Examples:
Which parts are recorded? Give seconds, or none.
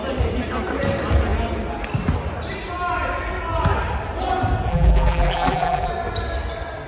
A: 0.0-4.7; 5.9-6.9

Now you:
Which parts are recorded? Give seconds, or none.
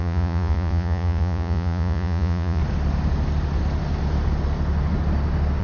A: 2.6-5.6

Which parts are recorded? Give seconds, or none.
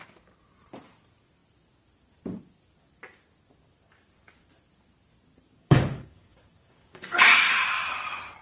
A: 0.0-5.6; 7.5-8.4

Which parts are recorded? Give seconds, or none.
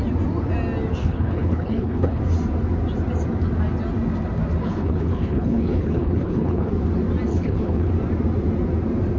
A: 0.0-1.0; 2.2-4.6; 6.7-7.3; 7.9-9.2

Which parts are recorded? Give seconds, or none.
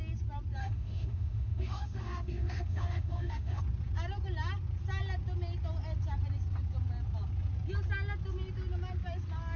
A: 0.0-0.6; 3.6-9.6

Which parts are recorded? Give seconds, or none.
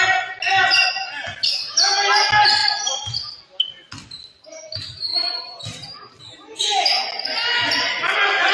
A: 0.0-2.6; 3.4-5.1; 6.2-8.5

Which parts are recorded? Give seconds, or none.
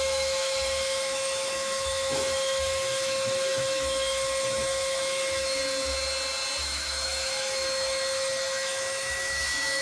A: 5.6-6.6